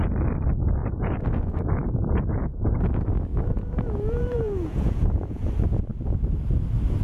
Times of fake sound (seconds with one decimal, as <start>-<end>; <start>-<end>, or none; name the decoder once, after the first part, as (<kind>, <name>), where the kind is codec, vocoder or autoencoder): 0.8-2.8 (vocoder, Vocos); 3.3-5.5